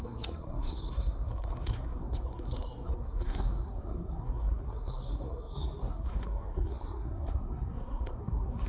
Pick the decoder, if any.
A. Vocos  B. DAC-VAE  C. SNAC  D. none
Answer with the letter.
C